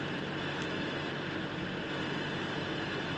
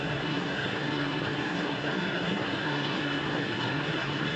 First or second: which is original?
first